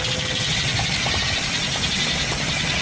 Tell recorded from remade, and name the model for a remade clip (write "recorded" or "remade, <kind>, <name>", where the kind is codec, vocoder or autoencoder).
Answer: recorded